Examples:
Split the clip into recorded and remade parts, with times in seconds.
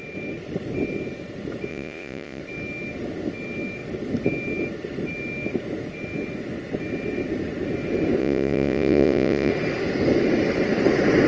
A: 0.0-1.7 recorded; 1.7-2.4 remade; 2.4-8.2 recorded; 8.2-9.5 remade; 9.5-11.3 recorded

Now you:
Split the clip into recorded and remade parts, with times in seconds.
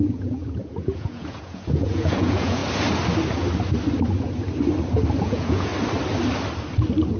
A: 0.0-2.6 remade; 2.6-5.2 recorded; 5.2-5.7 remade; 5.7-7.2 recorded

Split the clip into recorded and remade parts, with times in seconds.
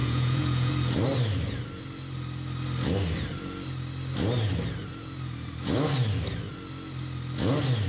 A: 0.0-0.7 remade; 0.7-7.9 recorded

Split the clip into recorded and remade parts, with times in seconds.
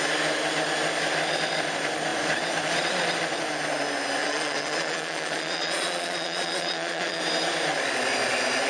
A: 0.0-4.2 recorded; 4.2-7.2 remade; 7.2-8.7 recorded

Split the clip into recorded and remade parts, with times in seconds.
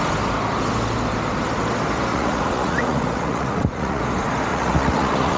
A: 0.0-2.1 recorded; 2.1-4.0 remade; 4.0-4.5 recorded; 4.5-5.4 remade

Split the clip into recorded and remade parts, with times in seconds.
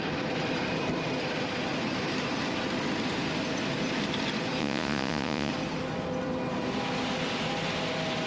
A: 0.0-4.6 recorded; 4.6-5.5 remade; 5.5-8.3 recorded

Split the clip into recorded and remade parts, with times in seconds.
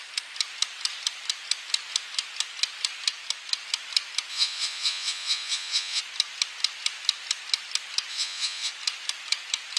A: 0.0-4.3 recorded; 4.3-6.0 remade; 6.0-8.1 recorded; 8.1-8.7 remade; 8.7-9.8 recorded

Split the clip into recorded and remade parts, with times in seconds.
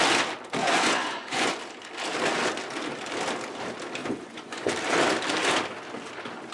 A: 0.0-0.6 recorded; 0.6-1.6 remade; 1.6-4.0 recorded; 4.0-4.7 remade; 4.7-6.5 recorded